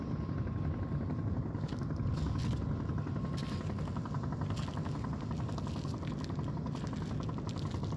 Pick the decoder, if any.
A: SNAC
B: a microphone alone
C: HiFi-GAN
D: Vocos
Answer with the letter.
B